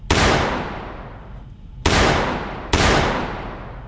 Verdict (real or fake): real